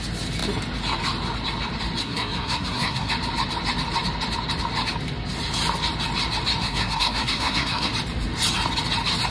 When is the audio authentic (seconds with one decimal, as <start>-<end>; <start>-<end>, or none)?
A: 0.0-2.0; 3.1-6.6; 7.9-9.3